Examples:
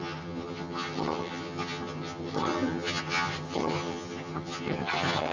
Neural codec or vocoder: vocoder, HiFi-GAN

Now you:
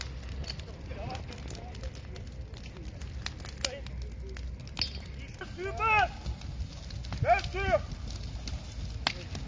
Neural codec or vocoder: none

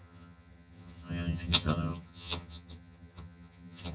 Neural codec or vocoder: vocoder, HiFi-GAN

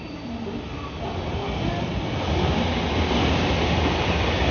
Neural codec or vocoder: none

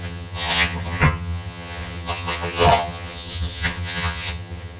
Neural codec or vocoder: vocoder, HiFi-GAN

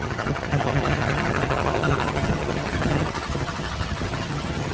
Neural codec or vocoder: vocoder, HiFi-GAN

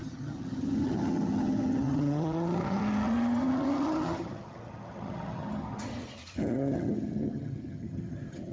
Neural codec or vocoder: vocoder, HiFi-GAN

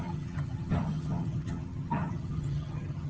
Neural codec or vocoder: vocoder, HiFi-GAN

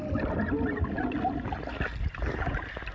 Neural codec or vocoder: none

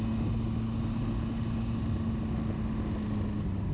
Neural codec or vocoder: none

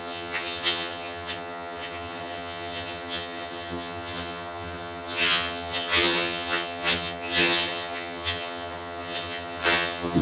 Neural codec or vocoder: vocoder, HiFi-GAN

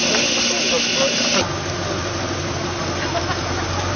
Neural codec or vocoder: none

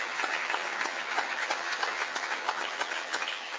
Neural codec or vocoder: vocoder, HiFi-GAN